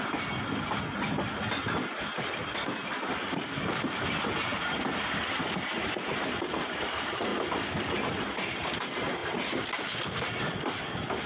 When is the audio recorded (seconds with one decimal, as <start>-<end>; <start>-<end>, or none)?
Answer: 0.0-11.3